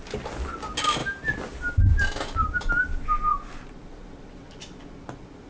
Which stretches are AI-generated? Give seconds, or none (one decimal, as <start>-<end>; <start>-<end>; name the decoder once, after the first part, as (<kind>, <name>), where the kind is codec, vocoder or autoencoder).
none